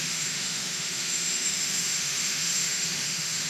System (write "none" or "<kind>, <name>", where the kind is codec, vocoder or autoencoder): autoencoder, DAC-VAE